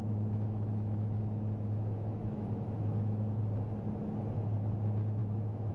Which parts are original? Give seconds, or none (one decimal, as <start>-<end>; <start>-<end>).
3.4-5.2